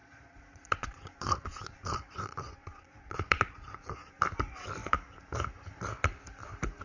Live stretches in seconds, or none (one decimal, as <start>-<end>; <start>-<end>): 4.1-6.8